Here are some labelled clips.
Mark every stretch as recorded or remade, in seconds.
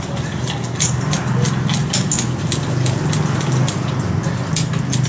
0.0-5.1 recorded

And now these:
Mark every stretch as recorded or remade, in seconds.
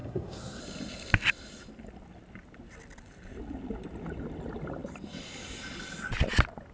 0.0-0.6 remade; 0.6-6.7 recorded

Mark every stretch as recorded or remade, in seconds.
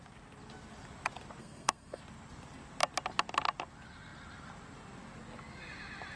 0.0-1.4 recorded; 1.4-2.0 remade; 2.0-6.2 recorded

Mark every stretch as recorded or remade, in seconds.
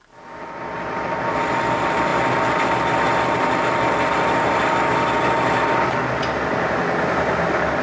0.0-7.8 recorded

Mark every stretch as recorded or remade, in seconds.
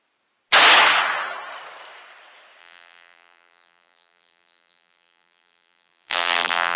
0.0-2.6 recorded; 2.6-6.8 remade